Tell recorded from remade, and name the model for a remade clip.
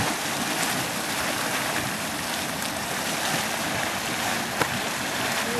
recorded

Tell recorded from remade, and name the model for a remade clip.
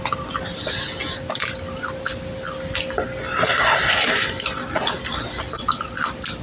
recorded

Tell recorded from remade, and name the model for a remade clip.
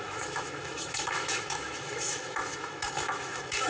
remade, autoencoder, DAC-VAE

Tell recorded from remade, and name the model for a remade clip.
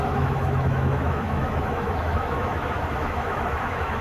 remade, autoencoder, DAC-VAE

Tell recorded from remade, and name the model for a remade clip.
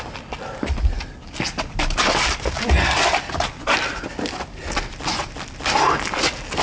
recorded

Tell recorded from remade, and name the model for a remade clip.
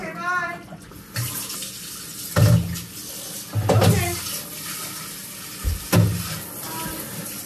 recorded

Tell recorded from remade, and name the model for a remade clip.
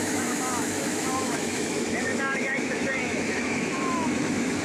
remade, autoencoder, DAC-VAE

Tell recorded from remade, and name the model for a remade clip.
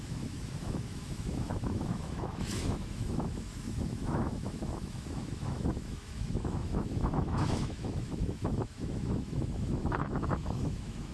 remade, autoencoder, DAC-VAE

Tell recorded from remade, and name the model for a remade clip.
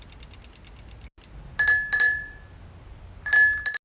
recorded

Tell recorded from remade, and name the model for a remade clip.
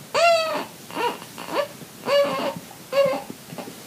recorded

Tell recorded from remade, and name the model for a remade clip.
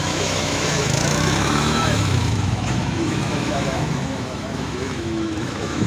remade, autoencoder, DAC-VAE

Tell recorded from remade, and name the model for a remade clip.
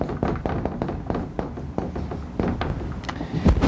recorded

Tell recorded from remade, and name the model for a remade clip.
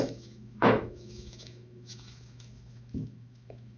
remade, autoencoder, DAC-VAE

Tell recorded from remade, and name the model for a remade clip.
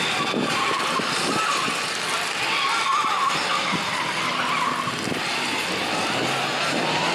recorded